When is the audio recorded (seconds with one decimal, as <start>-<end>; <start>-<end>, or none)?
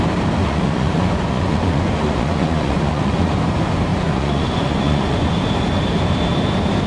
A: 0.0-0.4; 3.3-3.9; 5.3-6.9